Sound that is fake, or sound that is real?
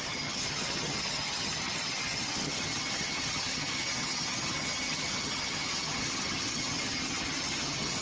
fake